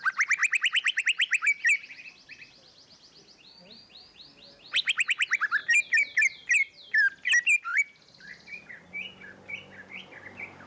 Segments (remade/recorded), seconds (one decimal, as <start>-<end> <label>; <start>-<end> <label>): 0.0-10.7 recorded